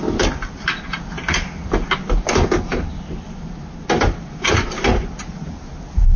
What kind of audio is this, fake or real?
real